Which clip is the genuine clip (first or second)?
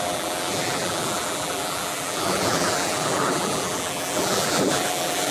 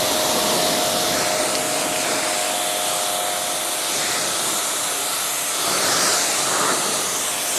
second